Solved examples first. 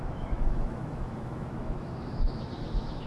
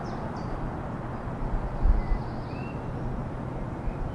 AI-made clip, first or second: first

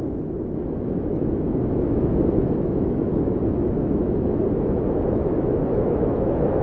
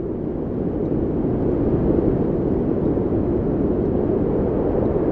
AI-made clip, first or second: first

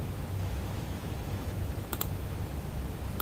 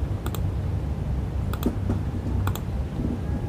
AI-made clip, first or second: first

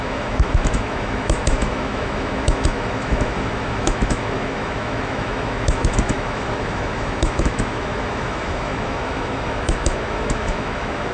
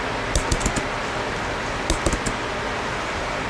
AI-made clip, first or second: first